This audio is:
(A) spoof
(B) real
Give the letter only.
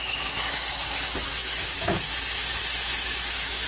A